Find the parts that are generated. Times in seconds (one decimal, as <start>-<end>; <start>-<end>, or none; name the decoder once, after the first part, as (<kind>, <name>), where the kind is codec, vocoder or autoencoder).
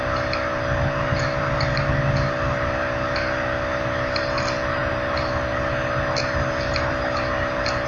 none